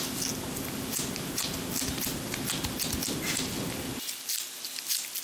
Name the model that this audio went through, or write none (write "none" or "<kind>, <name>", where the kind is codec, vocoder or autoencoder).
none